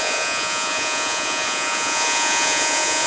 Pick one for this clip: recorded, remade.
remade